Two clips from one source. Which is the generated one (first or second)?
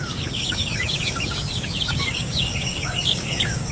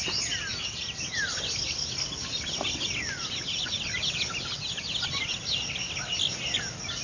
first